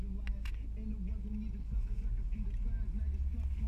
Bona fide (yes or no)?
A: yes